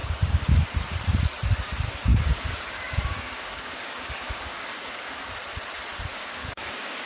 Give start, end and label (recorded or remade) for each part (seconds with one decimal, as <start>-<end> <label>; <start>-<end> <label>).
0.0-0.5 remade; 0.5-2.1 recorded; 2.1-5.2 remade; 5.2-6.1 recorded; 6.1-7.1 remade